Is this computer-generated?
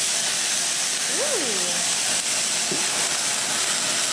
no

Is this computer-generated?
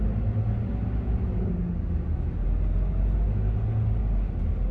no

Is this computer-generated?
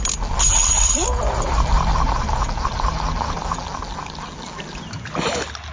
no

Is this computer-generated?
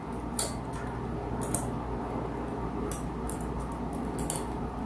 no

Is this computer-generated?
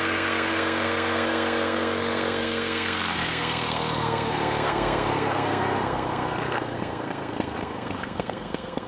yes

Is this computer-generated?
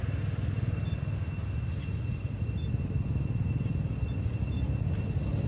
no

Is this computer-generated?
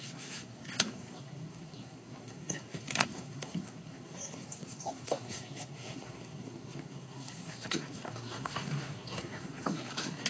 yes